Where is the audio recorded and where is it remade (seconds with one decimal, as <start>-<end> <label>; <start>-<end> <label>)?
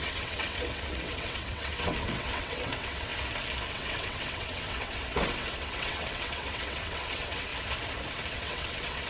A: 0.0-3.1 remade; 3.1-3.7 recorded; 3.7-7.5 remade; 7.5-8.3 recorded; 8.3-9.1 remade